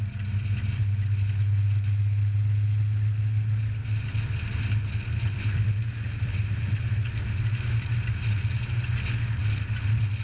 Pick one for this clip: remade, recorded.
recorded